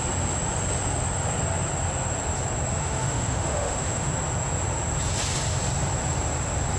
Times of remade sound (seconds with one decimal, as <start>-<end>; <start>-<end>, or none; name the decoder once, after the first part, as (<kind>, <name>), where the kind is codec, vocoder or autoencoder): 2.7-4.1 (autoencoder, DAC-VAE)